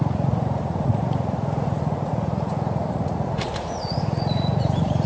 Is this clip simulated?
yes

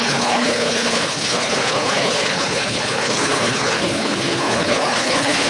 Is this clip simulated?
yes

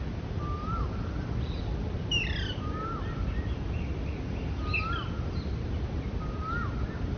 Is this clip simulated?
no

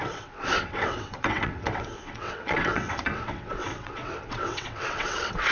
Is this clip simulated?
yes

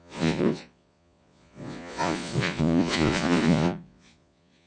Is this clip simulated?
yes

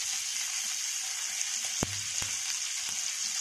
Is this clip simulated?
no